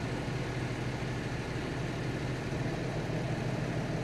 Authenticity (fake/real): real